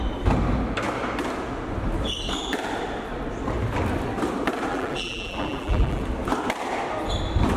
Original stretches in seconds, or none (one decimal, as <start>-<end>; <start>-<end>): 0.0-4.7; 6.0-7.6